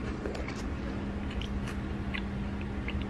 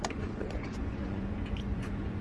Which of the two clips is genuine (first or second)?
first